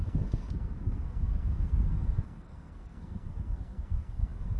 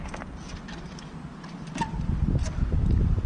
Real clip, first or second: second